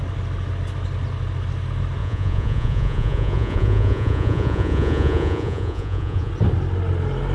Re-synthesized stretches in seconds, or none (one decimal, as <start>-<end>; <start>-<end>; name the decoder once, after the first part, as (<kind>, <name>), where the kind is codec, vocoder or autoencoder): 2.0-6.3 (vocoder, Vocos)